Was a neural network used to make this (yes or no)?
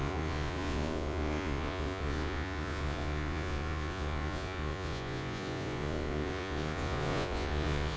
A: yes